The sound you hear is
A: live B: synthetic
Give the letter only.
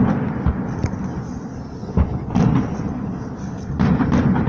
A